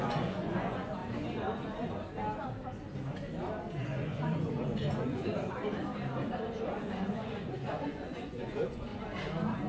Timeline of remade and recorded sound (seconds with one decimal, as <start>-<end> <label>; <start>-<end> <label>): 0.0-1.0 remade; 1.0-3.8 recorded; 3.8-5.3 remade; 5.3-6.8 recorded; 6.8-8.9 remade; 8.9-9.7 recorded